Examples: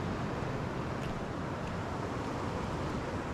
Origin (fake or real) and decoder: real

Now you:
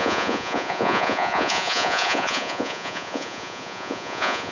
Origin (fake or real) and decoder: fake, vocoder, Vocos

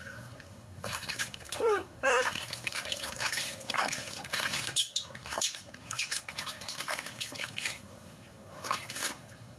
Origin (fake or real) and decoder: fake, codec, SNAC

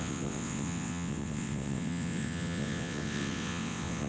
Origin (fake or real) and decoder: fake, vocoder, WaveNeXt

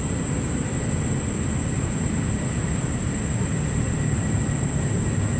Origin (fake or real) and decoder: real